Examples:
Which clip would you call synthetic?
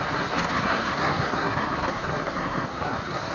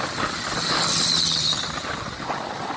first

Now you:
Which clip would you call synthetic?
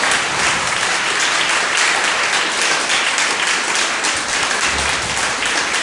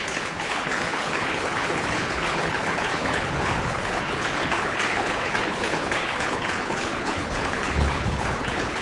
second